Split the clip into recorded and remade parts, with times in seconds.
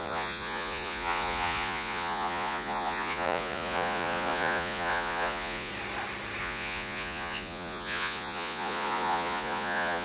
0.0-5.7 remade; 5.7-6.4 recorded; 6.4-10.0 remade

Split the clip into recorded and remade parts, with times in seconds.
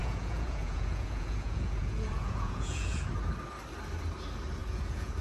0.0-3.1 remade; 3.1-4.6 recorded; 4.6-5.2 remade